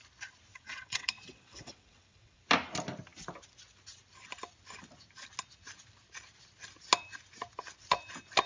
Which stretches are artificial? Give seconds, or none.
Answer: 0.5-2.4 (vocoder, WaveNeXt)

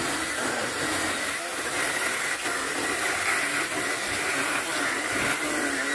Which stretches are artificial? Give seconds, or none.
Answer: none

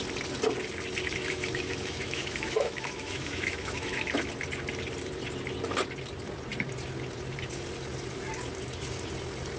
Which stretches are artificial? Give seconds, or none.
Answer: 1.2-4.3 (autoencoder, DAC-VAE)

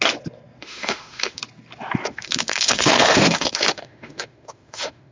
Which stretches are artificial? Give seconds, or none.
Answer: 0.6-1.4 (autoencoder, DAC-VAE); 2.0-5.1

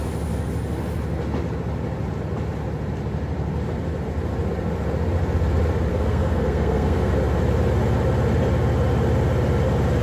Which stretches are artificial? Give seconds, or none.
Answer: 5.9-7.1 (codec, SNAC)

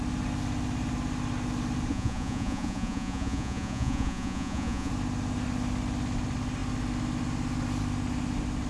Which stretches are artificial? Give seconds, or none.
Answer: 1.9-4.9 (vocoder, Vocos)

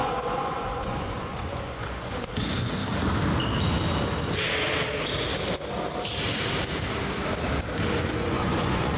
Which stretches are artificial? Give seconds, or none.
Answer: 0.0-2.8 (vocoder, Vocos); 8.0-9.0